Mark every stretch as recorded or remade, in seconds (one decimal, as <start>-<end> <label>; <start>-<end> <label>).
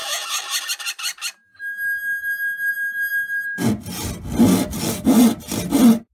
0.0-6.1 recorded